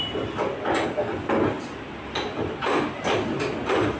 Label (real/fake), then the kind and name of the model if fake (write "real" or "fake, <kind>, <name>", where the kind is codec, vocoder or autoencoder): real